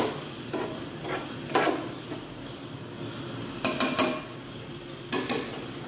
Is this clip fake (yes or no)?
no